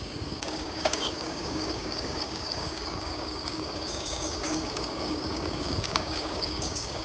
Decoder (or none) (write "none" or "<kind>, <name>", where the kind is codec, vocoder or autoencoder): codec, DAC